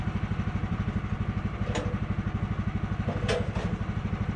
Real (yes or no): yes